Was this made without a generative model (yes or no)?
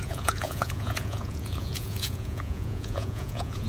no